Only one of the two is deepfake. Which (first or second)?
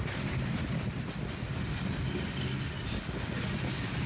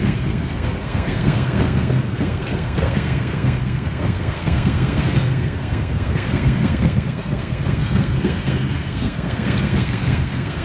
second